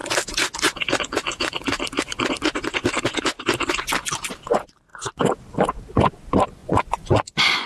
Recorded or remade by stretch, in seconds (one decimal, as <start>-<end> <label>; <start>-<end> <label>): 0.0-6.6 recorded; 6.6-7.7 remade